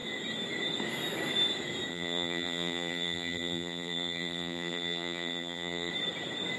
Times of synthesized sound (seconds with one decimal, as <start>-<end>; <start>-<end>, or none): 1.9-5.9

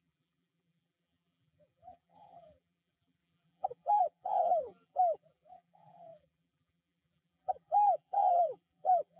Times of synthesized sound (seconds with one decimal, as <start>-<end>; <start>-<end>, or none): 0.0-9.2

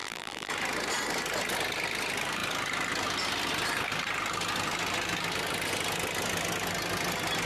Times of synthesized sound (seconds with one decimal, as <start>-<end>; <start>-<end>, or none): 0.0-0.5

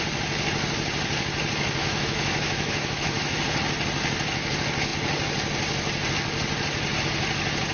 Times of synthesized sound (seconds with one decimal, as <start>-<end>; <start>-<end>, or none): 1.8-3.4